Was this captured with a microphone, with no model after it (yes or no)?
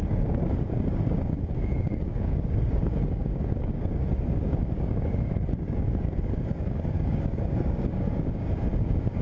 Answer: no